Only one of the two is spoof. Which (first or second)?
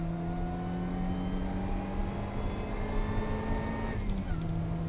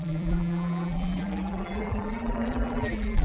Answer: second